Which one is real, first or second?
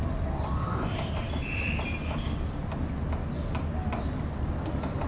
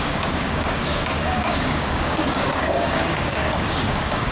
first